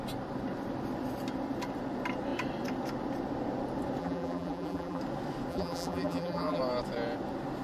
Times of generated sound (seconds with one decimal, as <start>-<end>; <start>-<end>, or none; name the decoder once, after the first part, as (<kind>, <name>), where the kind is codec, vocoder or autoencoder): 4.0-5.0 (vocoder, BigVGAN v2); 5.5-6.6